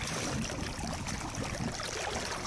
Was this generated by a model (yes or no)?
yes